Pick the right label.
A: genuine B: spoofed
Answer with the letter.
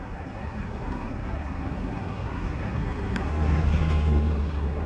B